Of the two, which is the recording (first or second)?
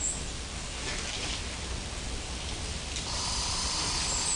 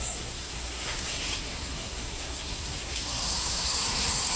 first